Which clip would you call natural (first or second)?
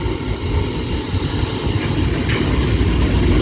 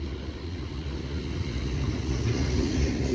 first